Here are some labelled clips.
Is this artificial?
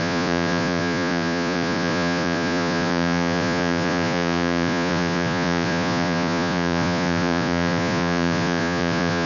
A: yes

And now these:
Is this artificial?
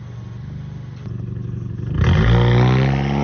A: no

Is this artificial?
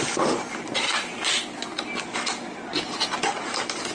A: no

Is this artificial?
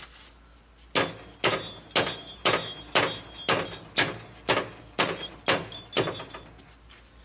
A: no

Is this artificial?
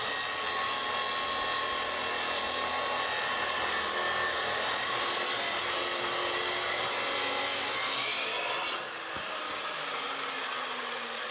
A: no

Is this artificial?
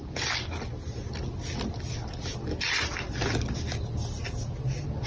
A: no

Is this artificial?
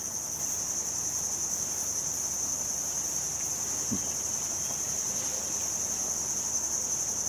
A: no